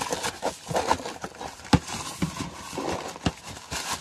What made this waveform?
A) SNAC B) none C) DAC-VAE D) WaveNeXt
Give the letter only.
B